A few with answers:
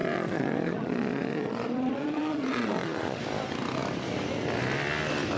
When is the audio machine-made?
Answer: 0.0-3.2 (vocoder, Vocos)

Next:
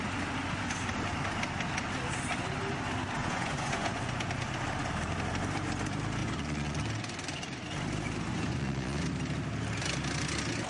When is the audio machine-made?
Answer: 3.2-4.3 (vocoder, Vocos); 6.2-6.8; 8.3-9.0

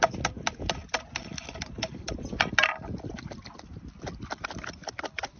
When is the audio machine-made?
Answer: none

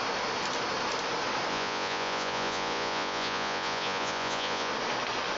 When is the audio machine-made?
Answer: 1.5-4.7 (vocoder, Vocos)

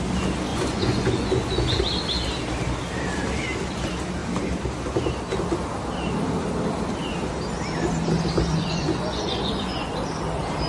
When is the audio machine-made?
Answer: 0.5-1.8 (vocoder, Vocos); 8.5-9.9

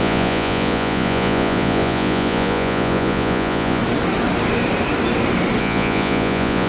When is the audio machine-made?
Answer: 0.0-3.8 (vocoder, Vocos); 5.6-6.7

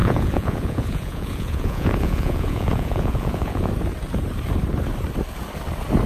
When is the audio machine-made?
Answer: 0.0-3.7 (vocoder, Vocos)